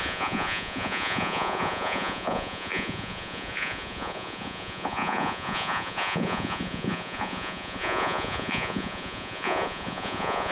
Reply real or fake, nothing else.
fake